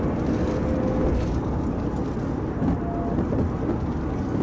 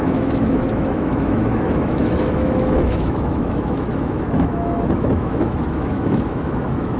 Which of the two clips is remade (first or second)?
second